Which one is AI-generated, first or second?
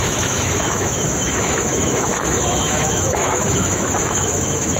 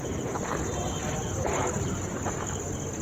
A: first